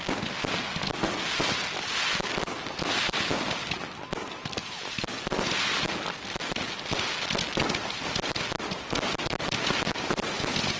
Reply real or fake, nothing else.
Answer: real